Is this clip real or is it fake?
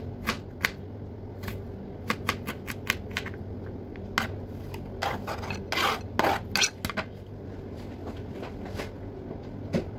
real